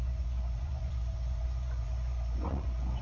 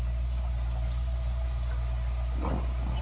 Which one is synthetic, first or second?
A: first